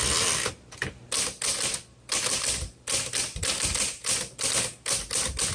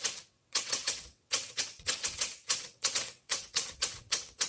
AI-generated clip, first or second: second